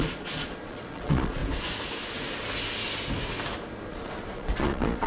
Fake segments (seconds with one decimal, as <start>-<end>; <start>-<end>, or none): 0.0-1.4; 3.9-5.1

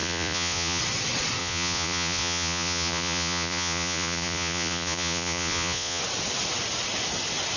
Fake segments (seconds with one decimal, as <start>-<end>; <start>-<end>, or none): 0.0-0.8; 1.4-6.0

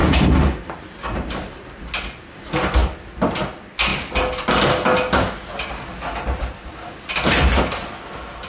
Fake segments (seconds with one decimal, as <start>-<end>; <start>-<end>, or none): none

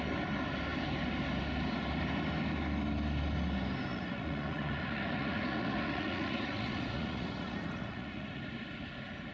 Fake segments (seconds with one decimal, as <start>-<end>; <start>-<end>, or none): 3.9-8.4